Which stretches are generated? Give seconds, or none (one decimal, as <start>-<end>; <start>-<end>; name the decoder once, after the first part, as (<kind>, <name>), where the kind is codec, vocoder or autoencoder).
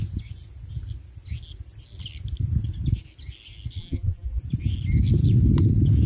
3.8-4.4 (vocoder, BigVGAN v2)